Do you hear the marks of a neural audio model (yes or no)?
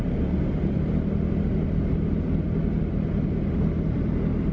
no